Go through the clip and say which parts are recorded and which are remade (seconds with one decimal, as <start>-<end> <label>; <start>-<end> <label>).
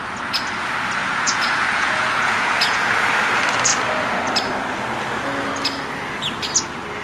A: 0.0-1.0 recorded; 1.0-2.9 remade; 2.9-7.0 recorded